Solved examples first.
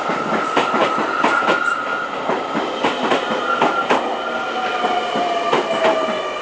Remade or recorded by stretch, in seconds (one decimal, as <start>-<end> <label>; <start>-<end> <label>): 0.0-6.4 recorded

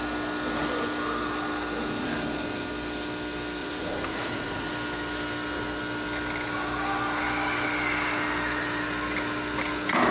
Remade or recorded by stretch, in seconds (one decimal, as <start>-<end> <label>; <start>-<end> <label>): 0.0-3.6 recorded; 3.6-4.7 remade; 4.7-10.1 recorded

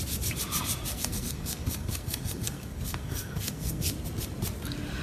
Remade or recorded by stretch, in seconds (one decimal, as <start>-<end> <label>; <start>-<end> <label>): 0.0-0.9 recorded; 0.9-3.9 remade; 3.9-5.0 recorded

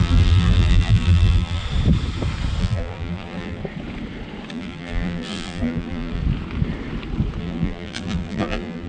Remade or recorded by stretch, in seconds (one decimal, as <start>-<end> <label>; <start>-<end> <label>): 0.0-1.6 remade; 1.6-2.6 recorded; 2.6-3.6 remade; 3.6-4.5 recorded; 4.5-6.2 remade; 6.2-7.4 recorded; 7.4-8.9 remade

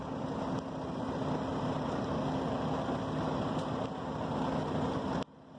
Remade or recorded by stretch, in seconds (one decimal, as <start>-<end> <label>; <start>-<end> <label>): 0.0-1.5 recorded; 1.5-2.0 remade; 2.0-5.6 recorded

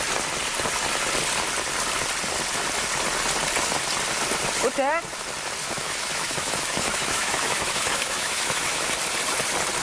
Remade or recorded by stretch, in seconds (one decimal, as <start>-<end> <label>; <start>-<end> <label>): 0.0-5.6 recorded; 5.6-8.9 remade; 8.9-9.8 recorded

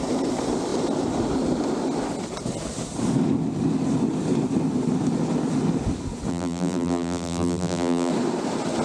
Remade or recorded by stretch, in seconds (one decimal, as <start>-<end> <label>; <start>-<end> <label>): 0.0-6.3 recorded; 6.3-8.1 remade; 8.1-8.8 recorded